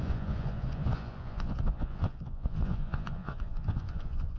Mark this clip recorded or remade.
remade